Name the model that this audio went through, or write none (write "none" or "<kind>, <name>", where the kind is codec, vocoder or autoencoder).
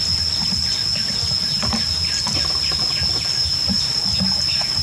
none